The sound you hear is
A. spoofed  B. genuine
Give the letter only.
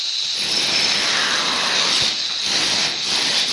B